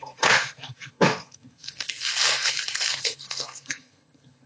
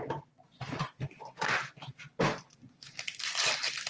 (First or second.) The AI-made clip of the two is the first